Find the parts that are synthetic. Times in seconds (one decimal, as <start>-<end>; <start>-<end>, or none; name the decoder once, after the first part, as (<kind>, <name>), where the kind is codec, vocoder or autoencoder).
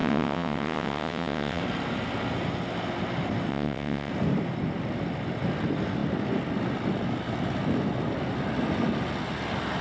0.0-1.6 (vocoder, WaveNeXt); 3.5-4.1